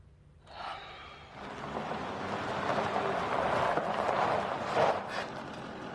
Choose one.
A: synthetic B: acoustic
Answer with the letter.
B